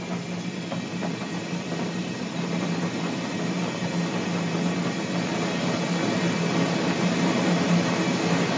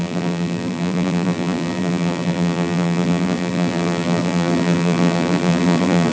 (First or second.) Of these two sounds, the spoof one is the second